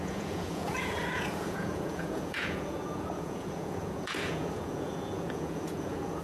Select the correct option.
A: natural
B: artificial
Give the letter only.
B